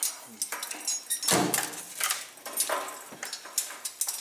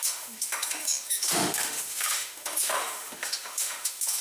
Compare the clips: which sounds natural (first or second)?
first